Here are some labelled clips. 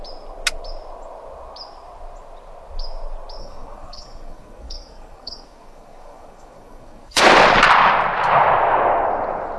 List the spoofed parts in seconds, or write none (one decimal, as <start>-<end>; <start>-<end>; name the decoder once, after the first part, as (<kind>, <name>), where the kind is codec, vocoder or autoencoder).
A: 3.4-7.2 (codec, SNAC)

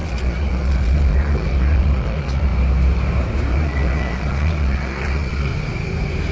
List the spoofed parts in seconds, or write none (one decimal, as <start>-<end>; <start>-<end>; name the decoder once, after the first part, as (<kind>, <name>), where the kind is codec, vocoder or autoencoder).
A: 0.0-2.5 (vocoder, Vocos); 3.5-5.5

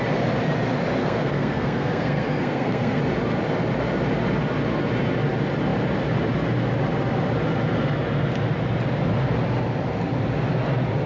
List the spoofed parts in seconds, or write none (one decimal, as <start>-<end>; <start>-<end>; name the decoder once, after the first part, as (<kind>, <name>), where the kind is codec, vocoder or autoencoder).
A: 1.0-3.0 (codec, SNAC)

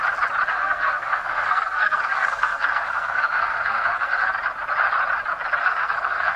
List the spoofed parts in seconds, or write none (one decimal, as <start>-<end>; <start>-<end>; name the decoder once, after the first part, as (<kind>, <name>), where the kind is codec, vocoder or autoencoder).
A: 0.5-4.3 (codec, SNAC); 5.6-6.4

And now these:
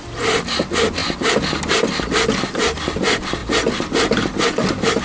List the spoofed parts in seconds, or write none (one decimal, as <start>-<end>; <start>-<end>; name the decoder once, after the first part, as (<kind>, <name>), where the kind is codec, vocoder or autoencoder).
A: none

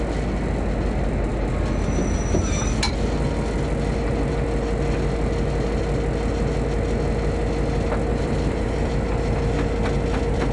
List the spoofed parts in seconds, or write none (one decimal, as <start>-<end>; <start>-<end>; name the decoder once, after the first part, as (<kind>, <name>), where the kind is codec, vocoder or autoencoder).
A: 8.1-8.9 (vocoder, BigVGAN v2)